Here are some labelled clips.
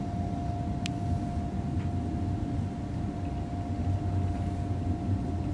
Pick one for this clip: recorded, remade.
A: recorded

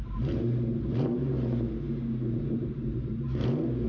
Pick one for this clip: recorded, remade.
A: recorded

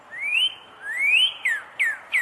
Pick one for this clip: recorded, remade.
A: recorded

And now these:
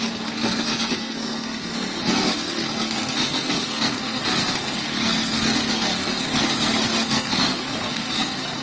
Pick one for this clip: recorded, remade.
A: remade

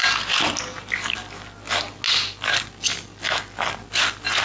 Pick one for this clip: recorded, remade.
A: recorded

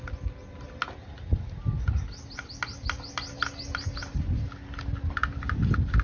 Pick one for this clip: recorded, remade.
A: recorded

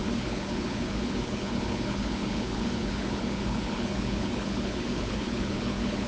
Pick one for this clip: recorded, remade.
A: remade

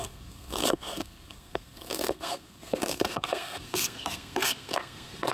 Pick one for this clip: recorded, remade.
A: remade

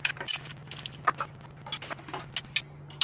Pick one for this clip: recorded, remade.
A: recorded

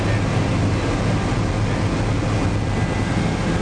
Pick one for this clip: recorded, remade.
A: recorded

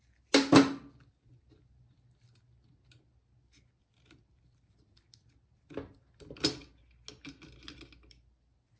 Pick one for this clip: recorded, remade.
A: recorded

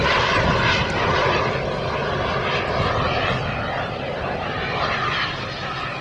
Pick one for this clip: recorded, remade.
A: recorded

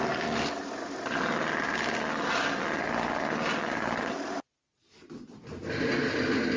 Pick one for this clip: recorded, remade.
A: recorded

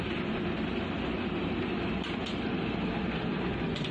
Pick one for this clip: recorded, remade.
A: recorded